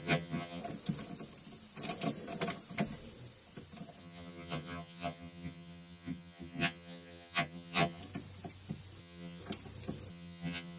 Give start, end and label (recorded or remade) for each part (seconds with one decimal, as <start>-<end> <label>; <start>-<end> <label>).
0.0-0.6 remade; 0.6-4.0 recorded; 4.0-8.0 remade; 8.0-9.0 recorded; 9.0-9.4 remade; 9.4-10.1 recorded; 10.1-10.8 remade